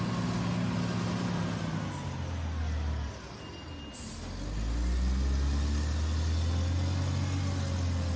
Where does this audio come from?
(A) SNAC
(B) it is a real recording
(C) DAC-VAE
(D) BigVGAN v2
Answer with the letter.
B